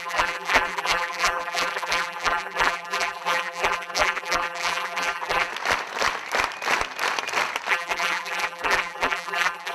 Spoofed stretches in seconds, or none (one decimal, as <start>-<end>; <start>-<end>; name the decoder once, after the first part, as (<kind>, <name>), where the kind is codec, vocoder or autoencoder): 0.0-5.5 (vocoder, BigVGAN v2); 7.7-9.7

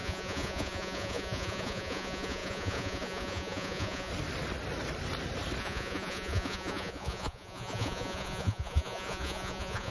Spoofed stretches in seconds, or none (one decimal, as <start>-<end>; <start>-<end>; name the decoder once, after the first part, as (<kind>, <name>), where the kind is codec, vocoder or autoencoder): 0.0-4.1 (vocoder, Vocos); 5.6-9.9

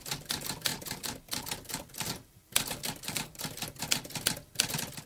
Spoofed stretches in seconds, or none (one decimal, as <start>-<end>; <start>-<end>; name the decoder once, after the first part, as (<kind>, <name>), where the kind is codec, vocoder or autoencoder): 0.7-3.8 (vocoder, BigVGAN v2)

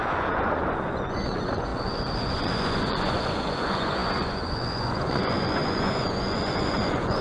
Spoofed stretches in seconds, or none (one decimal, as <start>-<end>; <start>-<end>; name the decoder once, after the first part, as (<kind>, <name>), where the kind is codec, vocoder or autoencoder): 0.0-7.2 (vocoder, Vocos)

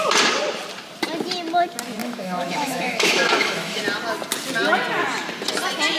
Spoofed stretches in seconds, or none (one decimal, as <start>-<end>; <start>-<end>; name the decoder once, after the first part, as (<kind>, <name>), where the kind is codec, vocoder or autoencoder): 2.0-3.8 (autoencoder, DAC-VAE)